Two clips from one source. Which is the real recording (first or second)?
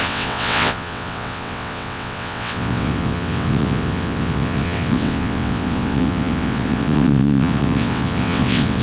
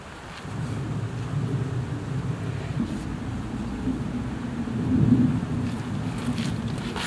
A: second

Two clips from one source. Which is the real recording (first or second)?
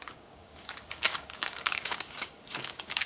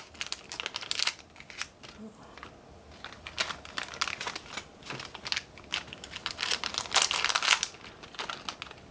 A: second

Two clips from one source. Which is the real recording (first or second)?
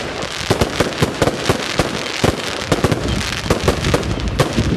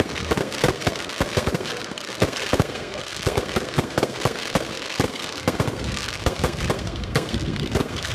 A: first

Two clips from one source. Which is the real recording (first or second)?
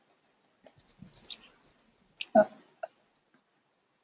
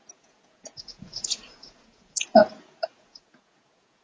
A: first